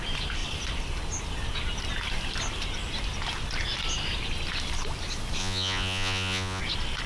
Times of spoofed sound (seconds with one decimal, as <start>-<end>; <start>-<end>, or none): 5.4-6.6